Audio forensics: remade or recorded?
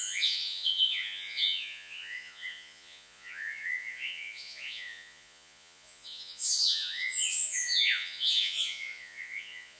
remade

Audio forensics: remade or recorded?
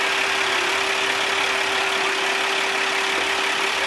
recorded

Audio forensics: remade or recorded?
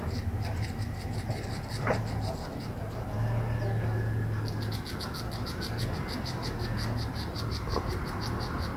recorded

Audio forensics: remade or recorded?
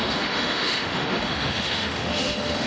remade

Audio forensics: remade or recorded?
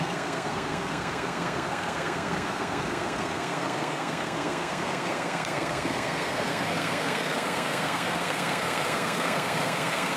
remade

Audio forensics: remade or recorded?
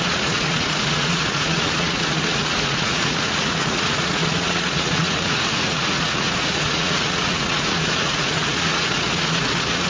remade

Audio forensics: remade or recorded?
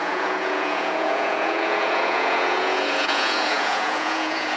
remade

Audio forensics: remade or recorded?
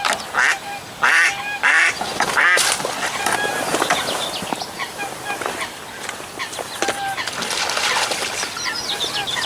recorded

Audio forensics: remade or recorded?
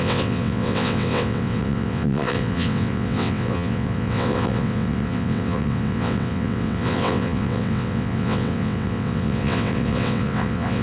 remade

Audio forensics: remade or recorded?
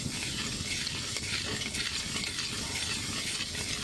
recorded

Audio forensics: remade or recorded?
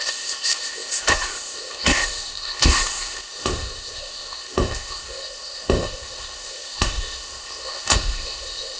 remade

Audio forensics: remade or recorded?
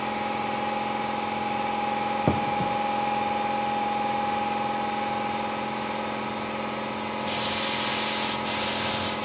recorded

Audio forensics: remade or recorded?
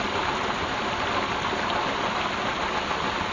recorded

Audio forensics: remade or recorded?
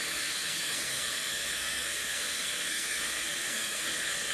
remade